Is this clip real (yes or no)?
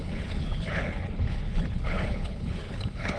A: no